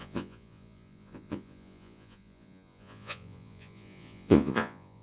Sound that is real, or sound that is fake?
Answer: fake